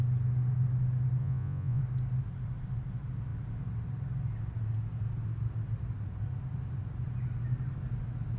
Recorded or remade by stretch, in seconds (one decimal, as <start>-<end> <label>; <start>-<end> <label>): 0.0-1.2 recorded; 1.2-1.8 remade; 1.8-8.4 recorded